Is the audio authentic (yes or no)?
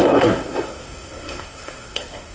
no